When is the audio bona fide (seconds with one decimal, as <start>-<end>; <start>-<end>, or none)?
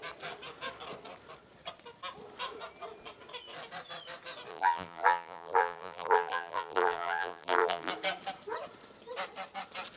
0.0-4.5; 7.9-10.0